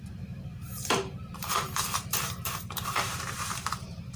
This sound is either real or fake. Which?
fake